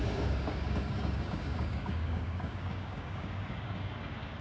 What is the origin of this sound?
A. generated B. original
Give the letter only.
A